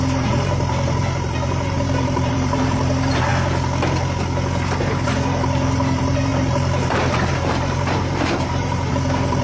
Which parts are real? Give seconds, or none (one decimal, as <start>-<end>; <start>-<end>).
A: 3.3-4.8